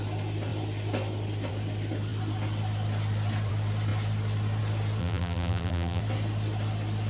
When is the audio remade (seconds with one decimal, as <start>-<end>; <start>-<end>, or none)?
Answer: 5.0-6.0